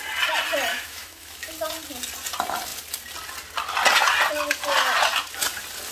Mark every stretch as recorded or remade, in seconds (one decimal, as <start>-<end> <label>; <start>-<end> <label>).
0.0-0.7 recorded; 0.7-1.5 remade; 1.5-5.9 recorded